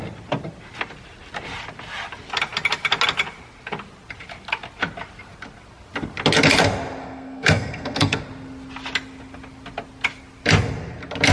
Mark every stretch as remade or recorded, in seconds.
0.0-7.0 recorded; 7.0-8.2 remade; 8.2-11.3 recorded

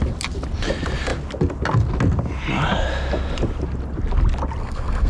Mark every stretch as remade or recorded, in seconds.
0.0-4.6 recorded; 4.6-5.1 remade

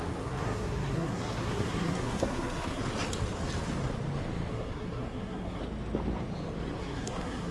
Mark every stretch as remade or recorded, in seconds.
0.0-2.8 remade; 2.8-4.5 recorded; 4.5-5.6 remade; 5.6-6.8 recorded; 6.8-7.5 remade